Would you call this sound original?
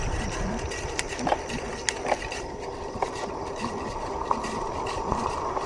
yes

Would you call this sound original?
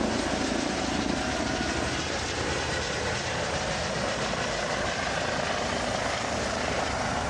yes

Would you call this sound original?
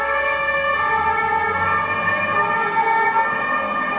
yes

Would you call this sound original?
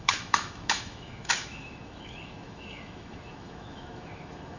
no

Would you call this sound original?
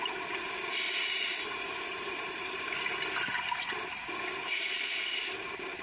yes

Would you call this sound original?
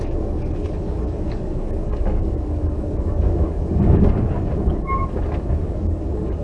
no